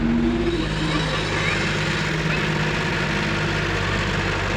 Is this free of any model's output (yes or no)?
yes